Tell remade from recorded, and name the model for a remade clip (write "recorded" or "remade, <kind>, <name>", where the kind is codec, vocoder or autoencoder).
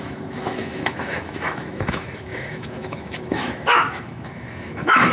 remade, autoencoder, DAC-VAE